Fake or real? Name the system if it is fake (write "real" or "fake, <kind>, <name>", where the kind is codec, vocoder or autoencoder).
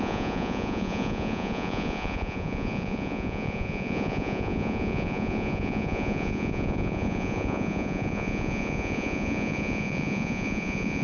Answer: fake, vocoder, Vocos